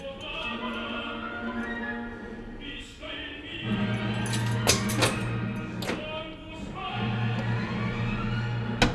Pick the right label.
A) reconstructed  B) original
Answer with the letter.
B